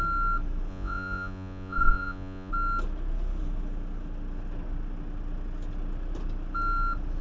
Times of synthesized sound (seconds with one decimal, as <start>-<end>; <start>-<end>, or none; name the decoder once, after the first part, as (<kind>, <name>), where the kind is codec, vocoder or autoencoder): 0.7-2.5 (vocoder, Vocos)